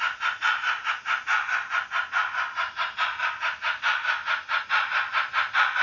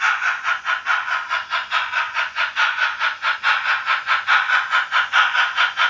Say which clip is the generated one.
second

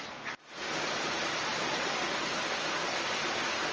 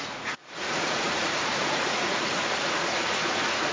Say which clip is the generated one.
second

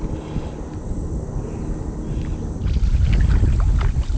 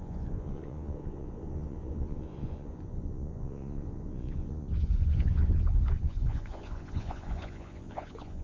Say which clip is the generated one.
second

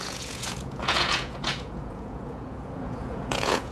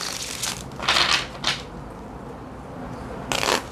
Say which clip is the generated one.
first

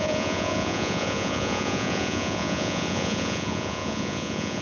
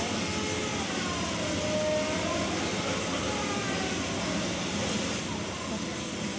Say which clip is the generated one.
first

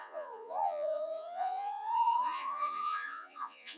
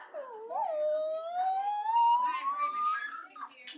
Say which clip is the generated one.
first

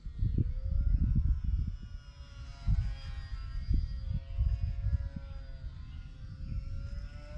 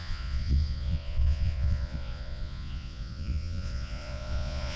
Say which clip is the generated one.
second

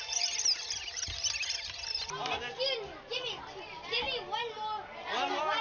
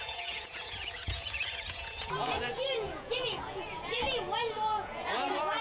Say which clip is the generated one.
second